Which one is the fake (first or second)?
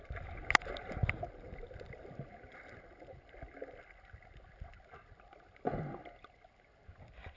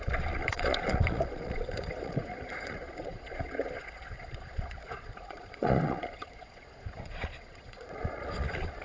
second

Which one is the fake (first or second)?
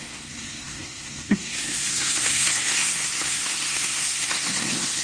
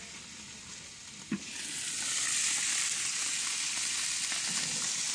first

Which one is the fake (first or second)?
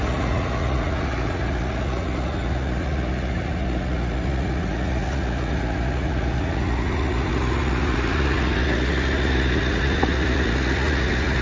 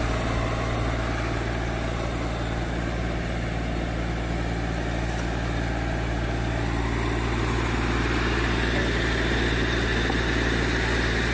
first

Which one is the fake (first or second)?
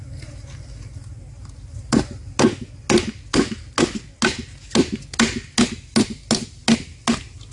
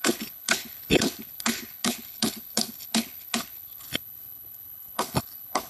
second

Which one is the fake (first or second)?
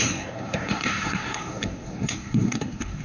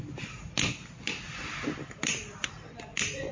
first